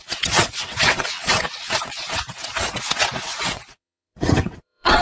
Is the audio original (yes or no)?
no